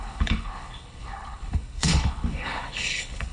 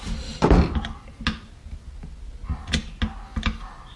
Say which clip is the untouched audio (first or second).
second